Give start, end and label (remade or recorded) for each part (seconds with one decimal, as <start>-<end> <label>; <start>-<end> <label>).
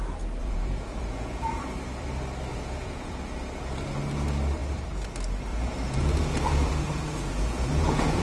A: 0.0-0.4 recorded; 0.4-1.6 remade; 1.6-2.5 recorded; 2.5-3.2 remade; 3.2-5.5 recorded; 5.5-8.2 remade